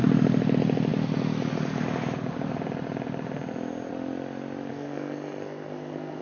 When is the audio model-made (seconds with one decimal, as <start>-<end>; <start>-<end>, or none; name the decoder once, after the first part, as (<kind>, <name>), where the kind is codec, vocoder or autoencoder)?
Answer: 4.7-6.2 (codec, SNAC)